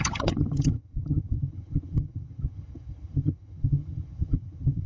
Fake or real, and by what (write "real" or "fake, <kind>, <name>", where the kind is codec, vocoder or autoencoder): fake, vocoder, HiFi-GAN